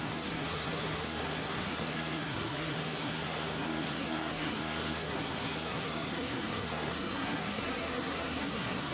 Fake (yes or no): yes